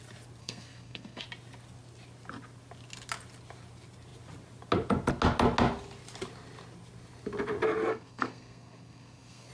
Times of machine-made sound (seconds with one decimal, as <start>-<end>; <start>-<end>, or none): 0.4-1.2; 7.9-9.5